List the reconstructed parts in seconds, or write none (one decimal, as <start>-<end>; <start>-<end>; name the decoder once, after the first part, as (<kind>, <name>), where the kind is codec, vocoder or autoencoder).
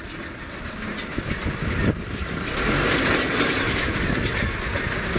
none